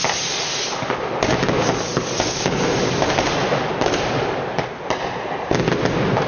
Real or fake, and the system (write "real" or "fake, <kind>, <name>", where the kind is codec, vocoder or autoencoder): real